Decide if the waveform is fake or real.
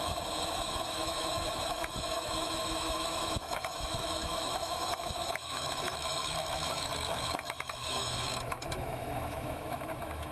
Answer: fake